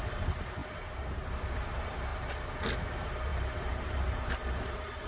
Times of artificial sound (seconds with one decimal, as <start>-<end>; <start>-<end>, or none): 0.0-0.6; 1.5-2.1; 2.9-5.1